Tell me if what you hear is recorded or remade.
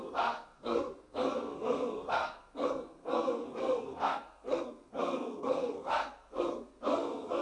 remade